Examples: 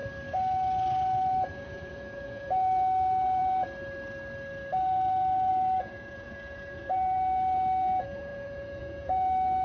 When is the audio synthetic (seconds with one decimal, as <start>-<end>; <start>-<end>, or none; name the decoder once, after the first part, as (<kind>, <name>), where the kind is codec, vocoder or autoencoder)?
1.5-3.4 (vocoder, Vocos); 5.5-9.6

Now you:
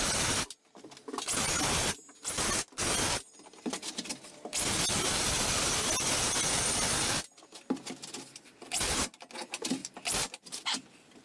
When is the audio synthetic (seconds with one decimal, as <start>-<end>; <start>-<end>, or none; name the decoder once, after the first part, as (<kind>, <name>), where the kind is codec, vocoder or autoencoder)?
none

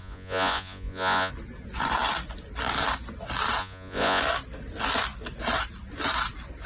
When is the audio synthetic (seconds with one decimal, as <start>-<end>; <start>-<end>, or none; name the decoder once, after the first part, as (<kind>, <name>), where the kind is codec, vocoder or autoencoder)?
0.0-1.3 (vocoder, Vocos); 3.6-4.2

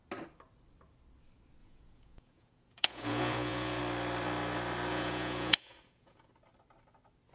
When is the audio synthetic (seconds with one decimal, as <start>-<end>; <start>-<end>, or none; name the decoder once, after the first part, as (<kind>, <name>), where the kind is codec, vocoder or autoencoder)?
1.6-3.8 (vocoder, Vocos); 4.9-6.3